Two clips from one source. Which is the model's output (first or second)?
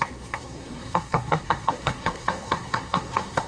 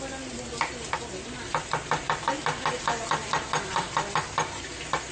first